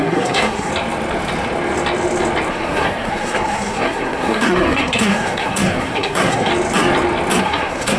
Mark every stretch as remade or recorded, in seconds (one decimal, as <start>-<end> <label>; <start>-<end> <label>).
0.0-0.7 remade; 0.7-2.5 recorded; 2.5-6.5 remade; 6.5-7.4 recorded; 7.4-8.0 remade